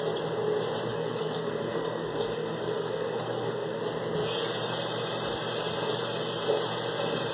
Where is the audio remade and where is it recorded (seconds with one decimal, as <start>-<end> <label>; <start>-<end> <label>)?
0.0-0.9 recorded; 0.9-3.8 remade; 3.8-7.3 recorded